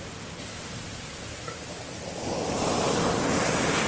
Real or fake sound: real